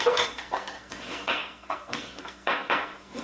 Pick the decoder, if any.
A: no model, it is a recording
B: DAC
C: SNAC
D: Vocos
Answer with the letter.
C